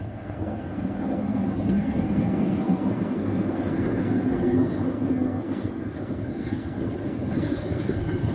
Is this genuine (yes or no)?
no